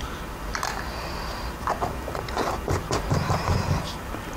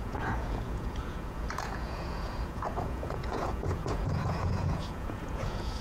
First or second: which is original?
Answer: first